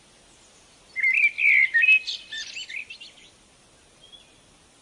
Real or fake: real